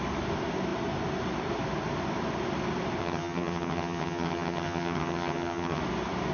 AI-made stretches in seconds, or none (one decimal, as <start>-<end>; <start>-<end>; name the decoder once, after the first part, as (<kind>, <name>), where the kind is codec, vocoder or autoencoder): 3.0-5.8 (vocoder, HiFi-GAN)